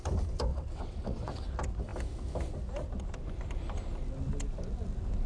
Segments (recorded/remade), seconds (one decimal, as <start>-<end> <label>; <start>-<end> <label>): 0.0-0.5 recorded; 0.5-1.5 remade; 1.5-5.3 recorded